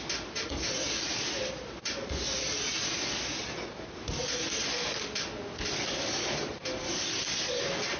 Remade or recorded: recorded